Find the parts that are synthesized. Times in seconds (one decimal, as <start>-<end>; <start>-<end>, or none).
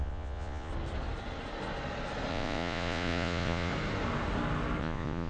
0.0-0.7; 2.3-3.7; 4.8-5.3